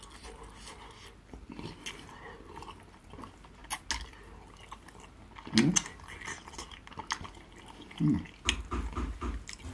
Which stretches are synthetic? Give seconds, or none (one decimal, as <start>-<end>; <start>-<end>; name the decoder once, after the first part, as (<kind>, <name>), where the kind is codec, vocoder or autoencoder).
none